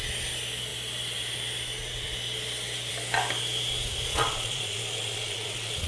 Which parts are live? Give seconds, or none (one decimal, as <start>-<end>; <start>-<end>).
0.0-4.1